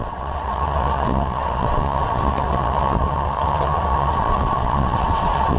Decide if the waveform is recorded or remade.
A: remade